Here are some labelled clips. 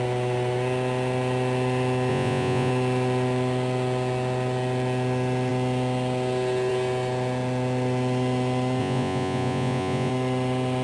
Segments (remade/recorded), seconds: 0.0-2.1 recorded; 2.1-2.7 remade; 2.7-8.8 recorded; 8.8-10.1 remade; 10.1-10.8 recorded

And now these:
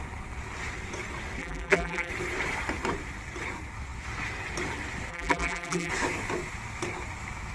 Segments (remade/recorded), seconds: 0.0-1.4 recorded; 1.4-2.1 remade; 2.1-5.1 recorded; 5.1-5.9 remade; 5.9-7.5 recorded

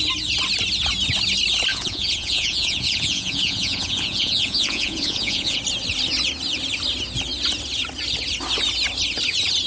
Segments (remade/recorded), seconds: 0.0-1.7 recorded; 1.7-5.6 remade; 5.6-9.7 recorded

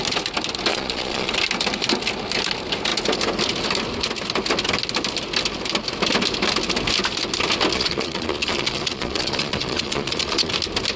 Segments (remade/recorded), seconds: 0.0-0.7 recorded; 0.7-1.3 remade; 1.3-7.7 recorded; 7.7-10.5 remade; 10.5-11.0 recorded